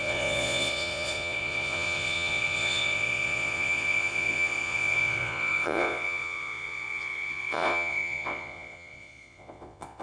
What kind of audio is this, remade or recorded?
remade